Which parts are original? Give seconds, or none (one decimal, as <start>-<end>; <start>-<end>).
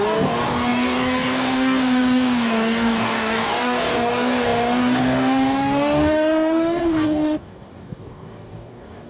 none